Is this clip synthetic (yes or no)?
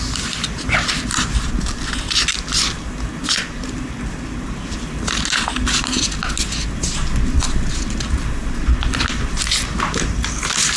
no